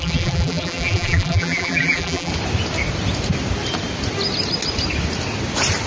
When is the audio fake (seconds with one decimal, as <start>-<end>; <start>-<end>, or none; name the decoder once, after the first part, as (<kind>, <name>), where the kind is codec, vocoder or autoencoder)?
0.0-2.3 (vocoder, BigVGAN v2)